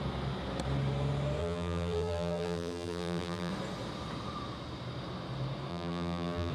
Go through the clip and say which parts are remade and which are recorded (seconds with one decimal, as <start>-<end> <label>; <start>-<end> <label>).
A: 0.0-1.4 recorded; 1.4-3.5 remade; 3.5-5.7 recorded; 5.7-6.5 remade

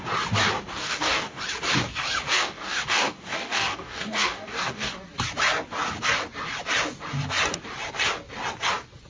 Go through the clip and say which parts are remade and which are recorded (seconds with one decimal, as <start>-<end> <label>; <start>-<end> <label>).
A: 0.0-0.8 recorded; 0.8-1.4 remade; 1.4-2.3 recorded; 2.3-4.9 remade; 4.9-9.1 recorded

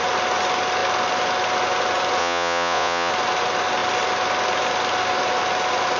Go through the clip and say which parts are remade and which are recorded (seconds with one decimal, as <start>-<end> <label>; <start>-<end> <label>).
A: 0.0-2.2 recorded; 2.2-3.1 remade; 3.1-6.0 recorded

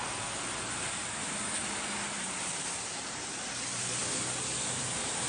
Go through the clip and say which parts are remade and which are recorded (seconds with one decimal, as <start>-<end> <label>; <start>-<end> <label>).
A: 0.0-5.3 recorded